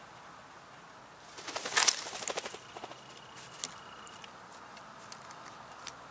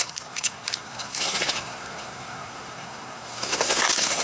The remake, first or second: second